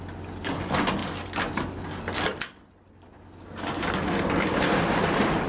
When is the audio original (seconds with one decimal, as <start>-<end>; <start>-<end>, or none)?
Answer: 0.0-5.5